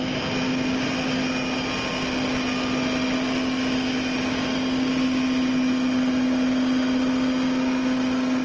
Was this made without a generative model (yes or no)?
yes